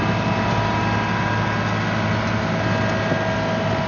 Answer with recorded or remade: recorded